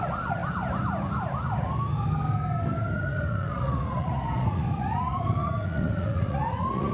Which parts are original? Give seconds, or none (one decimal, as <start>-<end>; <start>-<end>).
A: 0.4-2.9